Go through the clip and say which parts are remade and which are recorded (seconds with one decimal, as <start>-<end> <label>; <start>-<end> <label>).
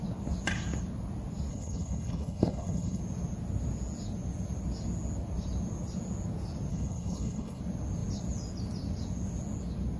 0.0-1.5 recorded; 1.5-3.0 remade; 3.0-6.7 recorded; 6.7-7.6 remade; 7.6-10.0 recorded